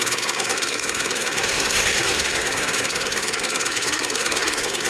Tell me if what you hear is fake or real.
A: fake